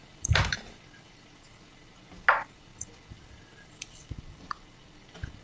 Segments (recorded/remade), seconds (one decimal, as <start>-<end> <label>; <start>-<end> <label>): 0.0-5.4 recorded